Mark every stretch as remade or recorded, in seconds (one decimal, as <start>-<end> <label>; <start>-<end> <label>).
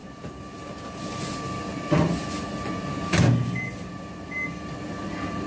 0.0-5.5 recorded